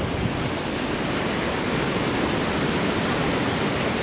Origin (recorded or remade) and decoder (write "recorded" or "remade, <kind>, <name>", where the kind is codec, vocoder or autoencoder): recorded